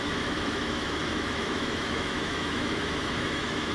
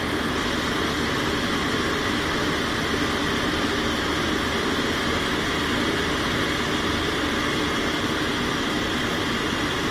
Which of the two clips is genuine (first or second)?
second